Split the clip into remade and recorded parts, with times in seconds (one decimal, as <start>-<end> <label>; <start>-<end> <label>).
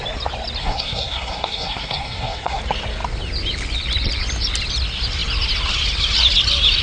0.0-0.6 recorded; 0.6-2.6 remade; 2.6-6.8 recorded